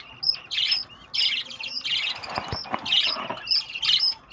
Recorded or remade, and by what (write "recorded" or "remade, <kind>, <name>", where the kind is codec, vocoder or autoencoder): recorded